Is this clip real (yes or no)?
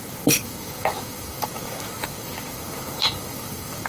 no